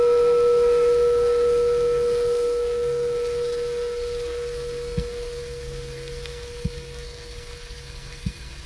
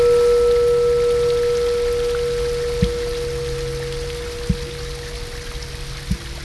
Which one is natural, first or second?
second